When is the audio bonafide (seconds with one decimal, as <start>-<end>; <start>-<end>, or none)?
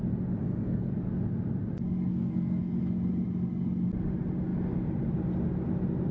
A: 0.0-0.4; 0.9-2.1; 2.6-6.1